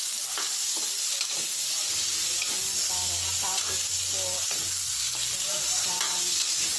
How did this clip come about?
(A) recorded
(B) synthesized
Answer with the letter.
A